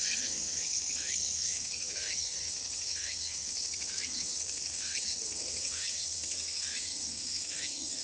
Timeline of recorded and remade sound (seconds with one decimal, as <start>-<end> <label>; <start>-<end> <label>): 0.0-8.0 remade